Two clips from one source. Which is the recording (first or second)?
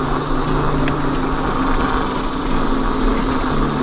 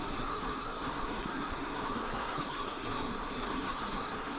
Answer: first